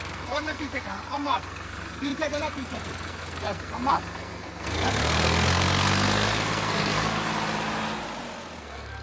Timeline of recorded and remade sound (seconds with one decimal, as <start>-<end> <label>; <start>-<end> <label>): 0.0-7.3 remade; 7.3-8.6 recorded; 8.6-9.0 remade